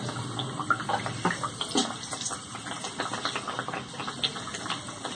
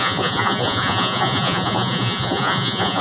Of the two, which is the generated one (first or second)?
second